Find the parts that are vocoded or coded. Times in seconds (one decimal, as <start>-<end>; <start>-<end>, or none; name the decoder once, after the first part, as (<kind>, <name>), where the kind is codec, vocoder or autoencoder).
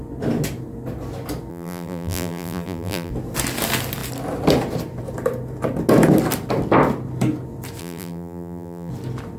1.5-3.1 (vocoder, BigVGAN v2); 7.8-8.9